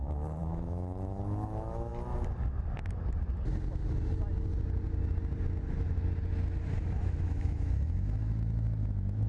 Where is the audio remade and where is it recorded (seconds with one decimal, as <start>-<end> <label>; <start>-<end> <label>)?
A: 0.0-1.9 remade; 1.9-6.8 recorded; 6.8-9.3 remade